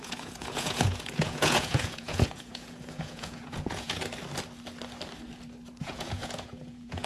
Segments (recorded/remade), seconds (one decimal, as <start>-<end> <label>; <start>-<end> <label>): 0.0-4.0 remade; 4.0-5.8 recorded; 5.8-7.0 remade